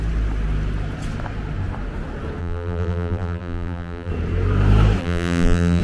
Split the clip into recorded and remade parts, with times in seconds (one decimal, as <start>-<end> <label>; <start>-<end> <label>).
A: 0.0-2.4 recorded; 2.4-4.1 remade; 4.1-5.0 recorded; 5.0-5.8 remade